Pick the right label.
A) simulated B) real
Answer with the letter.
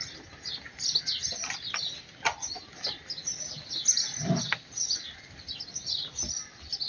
B